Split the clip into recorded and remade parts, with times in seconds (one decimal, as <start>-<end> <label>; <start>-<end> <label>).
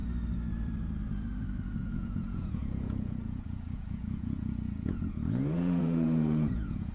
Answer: 0.0-1.8 recorded; 1.8-6.9 remade